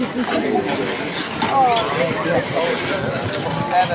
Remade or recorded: recorded